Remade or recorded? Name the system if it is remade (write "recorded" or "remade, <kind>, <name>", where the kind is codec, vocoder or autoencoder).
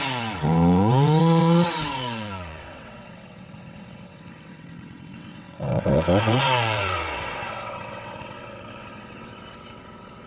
remade, vocoder, WaveNeXt